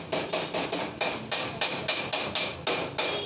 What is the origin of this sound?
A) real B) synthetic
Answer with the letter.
A